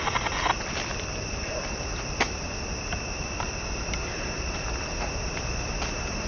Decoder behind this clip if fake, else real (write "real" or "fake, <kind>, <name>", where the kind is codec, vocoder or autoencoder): real